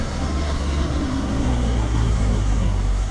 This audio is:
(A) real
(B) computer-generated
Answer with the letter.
B